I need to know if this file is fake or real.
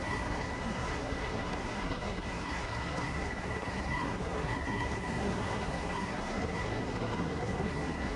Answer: fake